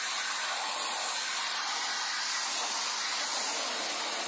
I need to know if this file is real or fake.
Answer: real